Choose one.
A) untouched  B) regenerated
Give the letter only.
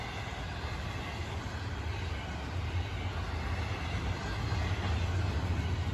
A